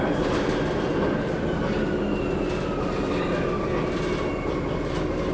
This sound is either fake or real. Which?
real